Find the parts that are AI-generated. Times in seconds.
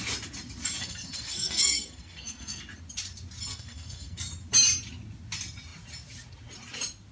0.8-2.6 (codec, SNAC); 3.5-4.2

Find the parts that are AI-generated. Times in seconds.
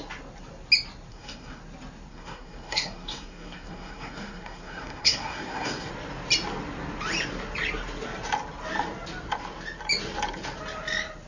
1.1-1.6 (codec, SNAC); 2.1-5.9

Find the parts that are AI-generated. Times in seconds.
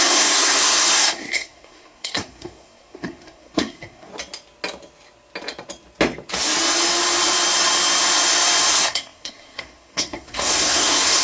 0.0-4.1 (codec, SNAC); 8.7-11.2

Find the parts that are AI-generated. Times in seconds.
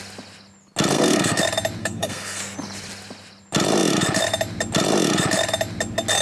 0.9-1.4 (codec, SNAC); 1.8-2.4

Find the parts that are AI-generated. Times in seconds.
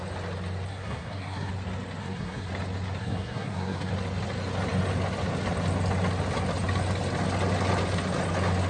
0.7-1.5 (codec, SNAC); 2.0-2.5; 3.0-3.9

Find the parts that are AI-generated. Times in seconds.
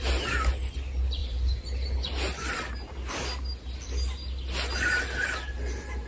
none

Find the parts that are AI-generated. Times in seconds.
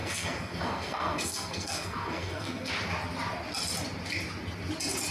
0.0-2.7 (codec, SNAC)